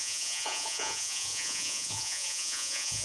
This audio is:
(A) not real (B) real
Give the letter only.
A